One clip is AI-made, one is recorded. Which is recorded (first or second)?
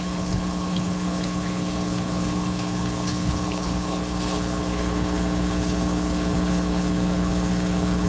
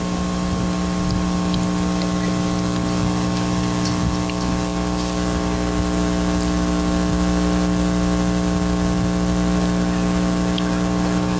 second